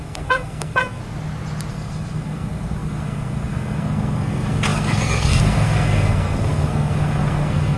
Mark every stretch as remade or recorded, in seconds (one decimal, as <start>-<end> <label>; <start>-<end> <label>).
0.0-1.0 remade; 1.0-1.7 recorded; 1.7-7.8 remade